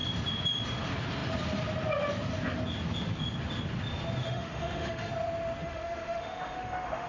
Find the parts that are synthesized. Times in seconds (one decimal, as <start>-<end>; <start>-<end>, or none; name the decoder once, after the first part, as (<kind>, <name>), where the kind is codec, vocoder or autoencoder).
4.2-5.1 (autoencoder, DAC-VAE); 5.6-7.1